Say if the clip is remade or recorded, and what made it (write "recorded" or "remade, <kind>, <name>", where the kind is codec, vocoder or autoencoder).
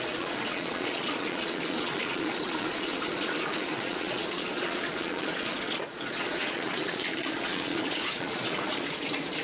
remade, vocoder, Vocos